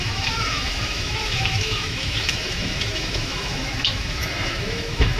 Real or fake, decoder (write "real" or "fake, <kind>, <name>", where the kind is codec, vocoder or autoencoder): fake, autoencoder, DAC-VAE